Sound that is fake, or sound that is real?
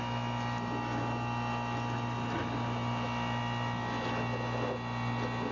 real